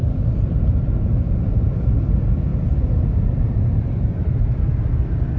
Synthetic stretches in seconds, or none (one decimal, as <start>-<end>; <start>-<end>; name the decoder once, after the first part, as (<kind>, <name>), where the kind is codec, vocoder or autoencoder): 0.0-1.9 (vocoder, BigVGAN v2); 2.5-4.8